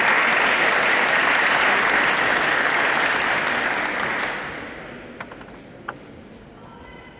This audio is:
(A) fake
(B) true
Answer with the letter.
B